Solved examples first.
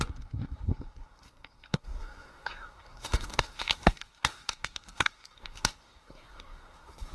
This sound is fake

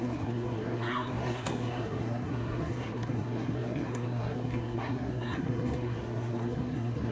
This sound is fake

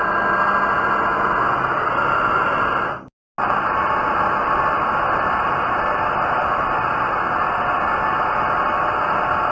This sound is real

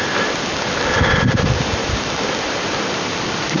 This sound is real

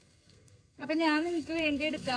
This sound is fake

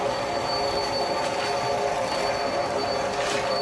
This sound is real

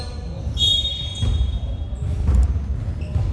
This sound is real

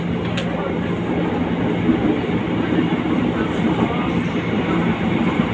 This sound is real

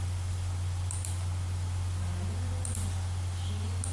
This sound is real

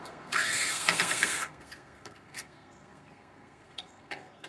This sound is fake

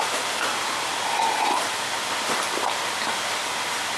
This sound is real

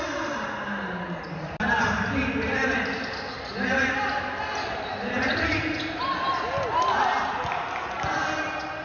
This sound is real